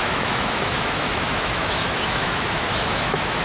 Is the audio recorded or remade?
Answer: remade